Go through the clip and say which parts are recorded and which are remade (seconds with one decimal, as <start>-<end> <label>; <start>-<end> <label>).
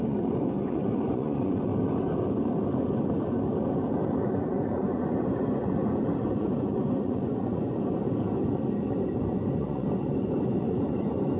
0.0-1.7 remade; 1.7-4.2 recorded; 4.2-5.8 remade; 5.8-6.4 recorded; 6.4-8.0 remade; 8.0-9.5 recorded; 9.5-11.4 remade